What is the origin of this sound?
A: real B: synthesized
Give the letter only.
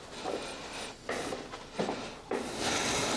A